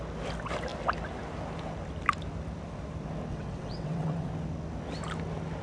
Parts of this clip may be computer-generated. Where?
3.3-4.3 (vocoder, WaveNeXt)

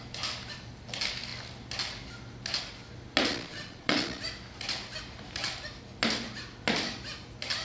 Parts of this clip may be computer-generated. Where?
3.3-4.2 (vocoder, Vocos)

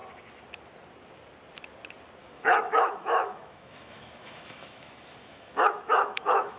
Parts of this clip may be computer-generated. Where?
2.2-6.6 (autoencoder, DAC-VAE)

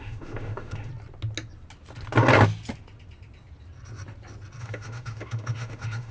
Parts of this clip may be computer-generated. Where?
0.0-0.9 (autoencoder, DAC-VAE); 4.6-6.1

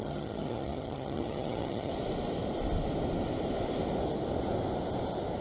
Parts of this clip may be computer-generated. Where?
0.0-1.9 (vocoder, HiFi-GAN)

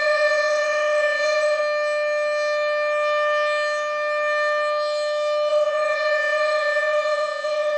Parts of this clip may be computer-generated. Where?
0.0-1.6 (vocoder, Vocos); 5.5-7.8